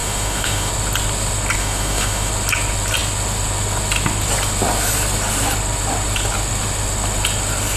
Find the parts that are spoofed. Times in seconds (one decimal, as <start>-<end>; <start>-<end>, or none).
0.0-0.7; 1.6-2.3